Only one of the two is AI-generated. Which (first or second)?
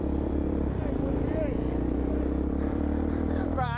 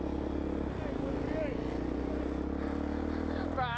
first